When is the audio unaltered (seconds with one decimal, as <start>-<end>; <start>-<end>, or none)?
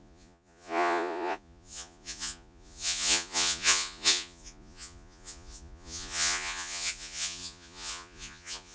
none